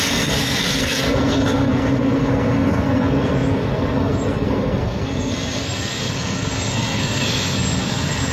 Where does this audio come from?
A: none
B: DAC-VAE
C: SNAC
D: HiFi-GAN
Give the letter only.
C